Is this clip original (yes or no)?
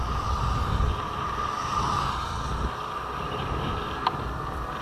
yes